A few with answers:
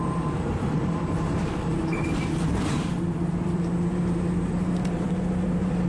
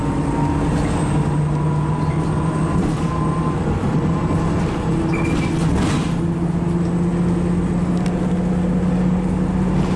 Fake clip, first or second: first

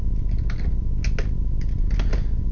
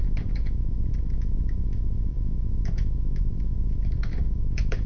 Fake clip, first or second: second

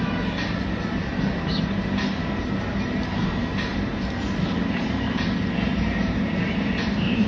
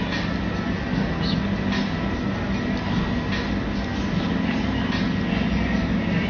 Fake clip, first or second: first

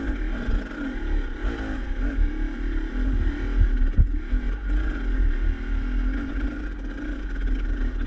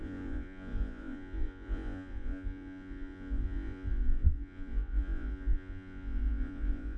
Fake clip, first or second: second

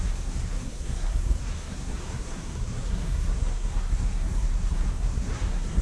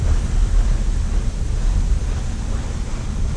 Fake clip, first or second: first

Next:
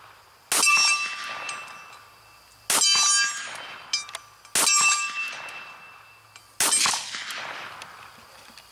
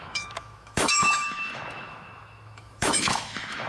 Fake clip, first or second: second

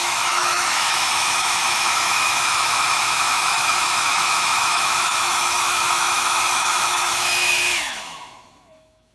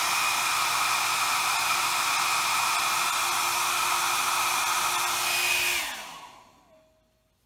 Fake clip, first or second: first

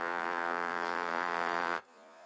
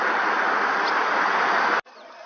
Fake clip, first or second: first